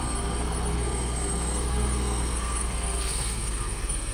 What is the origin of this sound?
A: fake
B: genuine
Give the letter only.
A